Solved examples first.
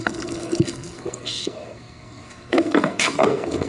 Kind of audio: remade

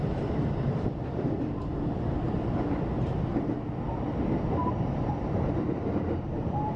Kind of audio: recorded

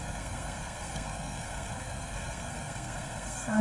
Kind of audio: remade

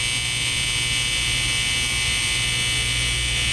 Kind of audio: recorded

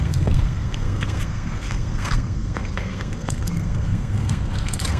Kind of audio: remade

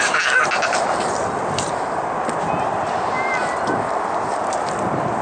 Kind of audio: recorded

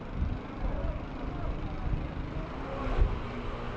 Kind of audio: recorded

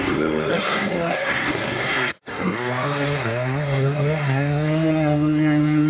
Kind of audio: remade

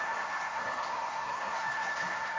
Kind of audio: remade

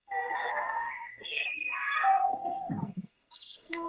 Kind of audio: remade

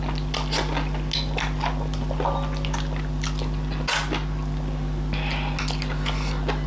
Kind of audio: recorded